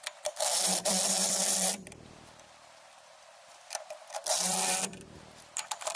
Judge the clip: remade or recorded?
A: remade